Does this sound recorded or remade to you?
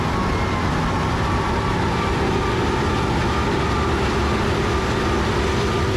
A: recorded